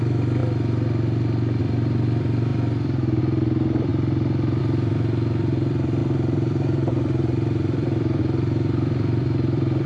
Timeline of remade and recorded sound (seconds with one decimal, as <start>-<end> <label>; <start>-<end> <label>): 0.0-0.4 remade; 0.4-1.6 recorded; 1.6-9.9 remade

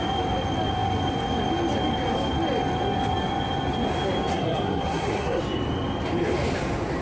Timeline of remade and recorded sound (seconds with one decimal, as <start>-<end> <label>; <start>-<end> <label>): 0.0-4.3 recorded; 4.3-5.4 remade; 5.4-7.0 recorded

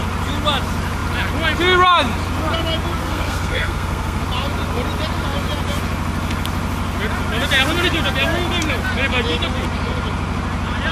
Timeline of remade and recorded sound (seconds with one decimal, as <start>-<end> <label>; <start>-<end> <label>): 0.0-3.0 recorded; 3.0-4.2 remade; 4.2-10.9 recorded

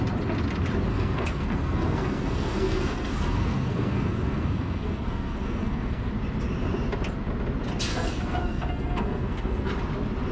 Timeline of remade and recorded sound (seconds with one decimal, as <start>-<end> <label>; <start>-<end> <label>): 0.0-0.9 recorded; 0.9-6.1 remade; 6.1-7.9 recorded; 7.9-9.7 remade; 9.7-10.3 recorded

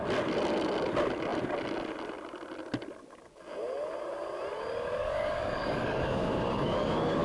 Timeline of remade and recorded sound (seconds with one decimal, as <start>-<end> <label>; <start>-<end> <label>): 0.0-5.0 recorded; 5.0-7.2 remade

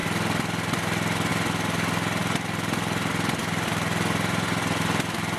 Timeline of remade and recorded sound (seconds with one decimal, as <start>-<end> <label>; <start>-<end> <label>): 0.0-2.2 recorded; 2.2-3.1 remade; 3.1-5.4 recorded

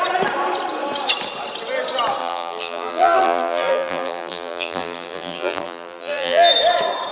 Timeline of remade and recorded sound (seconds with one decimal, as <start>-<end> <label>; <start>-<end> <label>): 0.0-2.2 recorded; 2.2-6.5 remade; 6.5-7.1 recorded

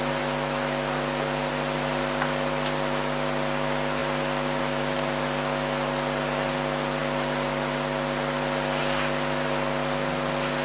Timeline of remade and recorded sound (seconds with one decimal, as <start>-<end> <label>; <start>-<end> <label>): 0.0-10.6 recorded